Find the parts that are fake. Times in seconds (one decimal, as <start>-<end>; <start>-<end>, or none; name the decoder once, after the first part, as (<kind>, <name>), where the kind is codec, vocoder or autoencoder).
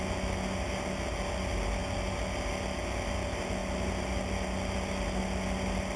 none